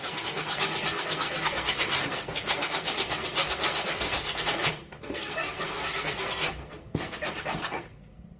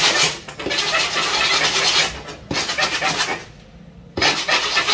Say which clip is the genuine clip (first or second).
second